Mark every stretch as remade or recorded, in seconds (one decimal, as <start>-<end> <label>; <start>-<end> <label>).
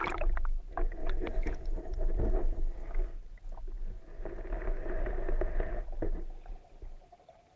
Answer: 0.0-1.0 recorded; 1.0-3.1 remade; 3.1-7.6 recorded